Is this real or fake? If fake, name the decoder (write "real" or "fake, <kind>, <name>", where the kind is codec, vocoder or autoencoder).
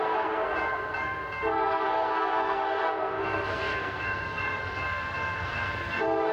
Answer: fake, codec, SNAC